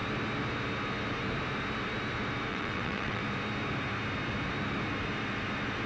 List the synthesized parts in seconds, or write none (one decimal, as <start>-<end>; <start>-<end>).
2.5-3.2